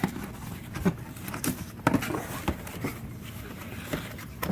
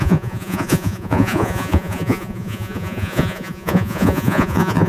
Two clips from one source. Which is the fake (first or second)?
second